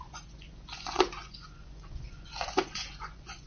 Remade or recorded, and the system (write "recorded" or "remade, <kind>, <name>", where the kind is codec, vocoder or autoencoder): remade, vocoder, Vocos